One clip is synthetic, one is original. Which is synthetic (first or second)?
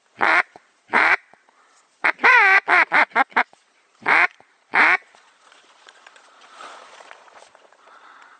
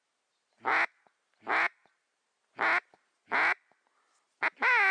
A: first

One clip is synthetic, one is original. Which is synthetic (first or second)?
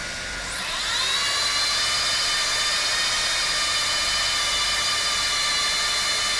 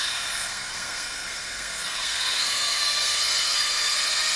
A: second